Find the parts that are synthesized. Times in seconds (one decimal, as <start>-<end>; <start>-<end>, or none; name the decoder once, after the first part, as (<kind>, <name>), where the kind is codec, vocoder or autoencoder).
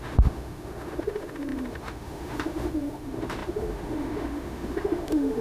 0.0-5.4 (autoencoder, DAC-VAE)